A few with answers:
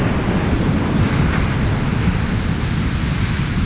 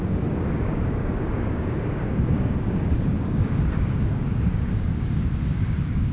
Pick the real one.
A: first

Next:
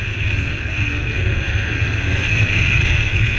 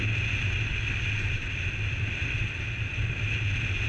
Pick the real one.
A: second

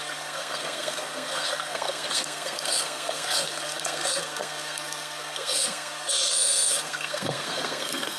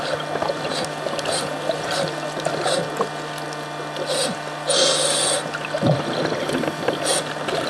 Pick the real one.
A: second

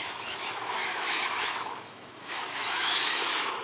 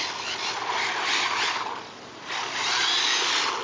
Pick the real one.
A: second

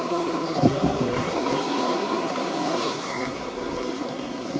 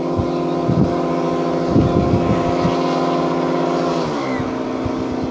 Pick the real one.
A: second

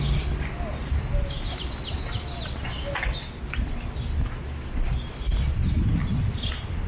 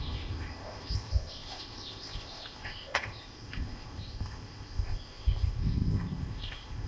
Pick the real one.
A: first